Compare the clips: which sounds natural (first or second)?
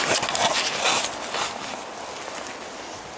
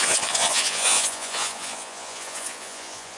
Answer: first